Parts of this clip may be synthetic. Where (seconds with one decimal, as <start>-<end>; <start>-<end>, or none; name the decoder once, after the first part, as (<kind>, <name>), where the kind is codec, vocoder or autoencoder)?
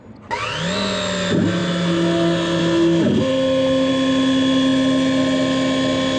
none